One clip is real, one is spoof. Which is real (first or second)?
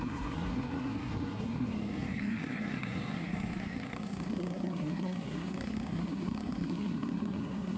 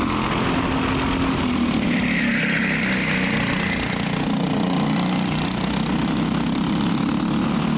second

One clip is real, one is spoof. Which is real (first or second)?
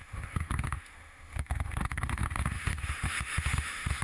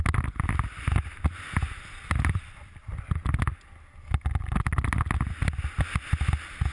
second